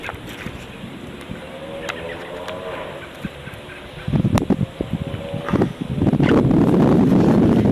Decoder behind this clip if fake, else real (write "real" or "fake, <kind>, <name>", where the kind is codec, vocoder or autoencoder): real